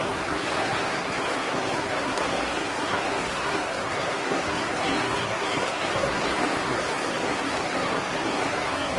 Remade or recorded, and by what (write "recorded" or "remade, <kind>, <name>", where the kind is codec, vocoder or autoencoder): remade, codec, SNAC